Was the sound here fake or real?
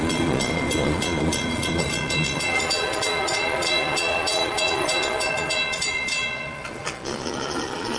fake